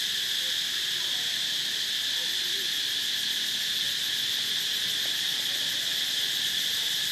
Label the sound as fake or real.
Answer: real